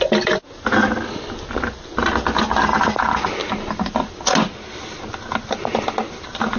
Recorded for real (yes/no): yes